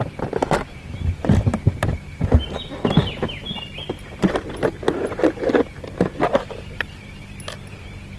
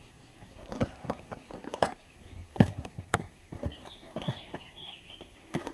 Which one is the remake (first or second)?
second